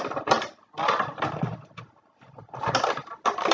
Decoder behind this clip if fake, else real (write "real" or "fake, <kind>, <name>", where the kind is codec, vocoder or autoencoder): real